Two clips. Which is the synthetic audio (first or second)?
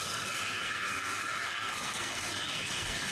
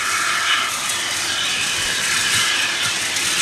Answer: first